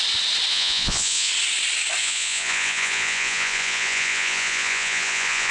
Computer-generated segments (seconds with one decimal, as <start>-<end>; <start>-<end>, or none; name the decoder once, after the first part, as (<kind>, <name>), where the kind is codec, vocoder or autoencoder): 0.5-1.3 (vocoder, Vocos); 2.0-5.5